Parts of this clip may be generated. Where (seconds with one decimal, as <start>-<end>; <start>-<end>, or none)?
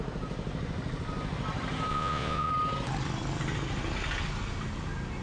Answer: 1.9-2.5